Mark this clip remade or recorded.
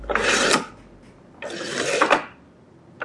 recorded